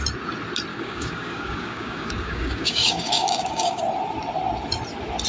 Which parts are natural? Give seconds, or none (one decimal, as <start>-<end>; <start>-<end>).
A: 0.0-0.7; 3.8-5.3